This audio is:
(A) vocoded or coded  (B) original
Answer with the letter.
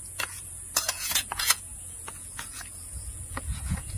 A